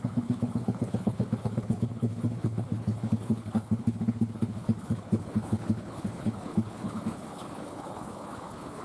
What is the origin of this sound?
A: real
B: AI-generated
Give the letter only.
B